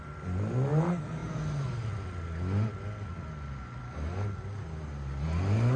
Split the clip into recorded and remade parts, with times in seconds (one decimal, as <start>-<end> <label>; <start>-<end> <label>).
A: 0.0-5.8 recorded